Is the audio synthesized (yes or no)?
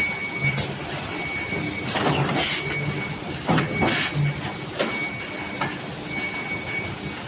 no